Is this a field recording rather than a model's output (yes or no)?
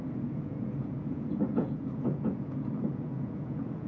no